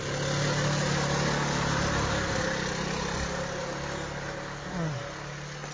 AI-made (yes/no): no